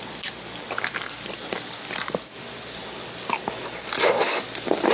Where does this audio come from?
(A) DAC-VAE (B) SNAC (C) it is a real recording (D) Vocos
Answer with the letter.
C